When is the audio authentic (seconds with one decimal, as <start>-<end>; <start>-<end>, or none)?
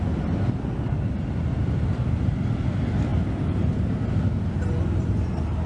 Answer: 0.0-5.7